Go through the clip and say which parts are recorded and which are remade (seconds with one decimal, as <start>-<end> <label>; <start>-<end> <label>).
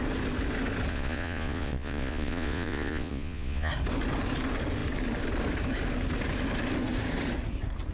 0.0-0.9 recorded; 0.9-3.7 remade; 3.7-7.9 recorded